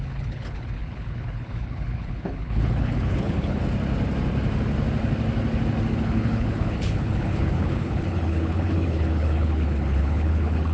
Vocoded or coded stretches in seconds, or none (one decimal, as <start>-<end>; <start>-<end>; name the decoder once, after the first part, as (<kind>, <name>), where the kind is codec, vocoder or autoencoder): 0.0-3.6 (codec, HILCodec); 5.9-10.7